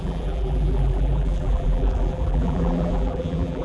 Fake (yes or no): yes